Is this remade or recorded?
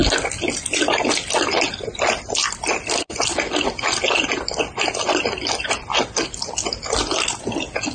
recorded